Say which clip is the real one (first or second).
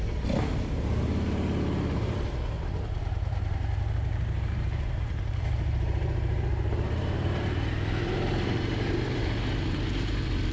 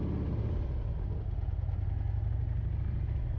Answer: second